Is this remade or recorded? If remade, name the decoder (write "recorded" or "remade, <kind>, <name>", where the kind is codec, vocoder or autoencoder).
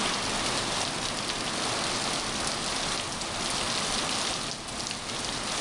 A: recorded